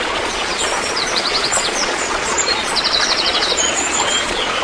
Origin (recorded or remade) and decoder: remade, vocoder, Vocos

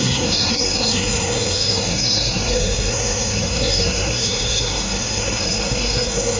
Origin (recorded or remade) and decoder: remade, codec, SNAC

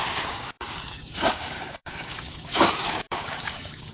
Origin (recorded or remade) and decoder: remade, codec, DAC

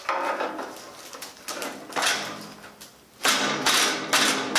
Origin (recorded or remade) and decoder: recorded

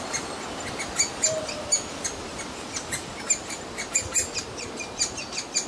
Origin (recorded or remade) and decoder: recorded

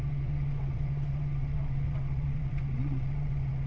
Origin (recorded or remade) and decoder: remade, vocoder, WaveNeXt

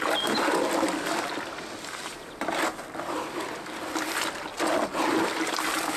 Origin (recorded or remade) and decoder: recorded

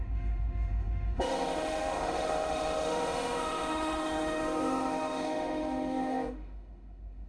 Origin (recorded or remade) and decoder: remade, autoencoder, DAC-VAE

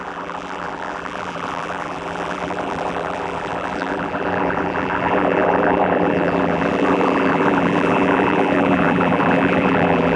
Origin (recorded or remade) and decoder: remade, vocoder, BigVGAN v2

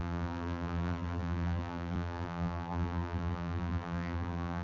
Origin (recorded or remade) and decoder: remade, vocoder, BigVGAN v2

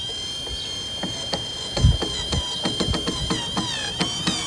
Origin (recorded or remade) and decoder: recorded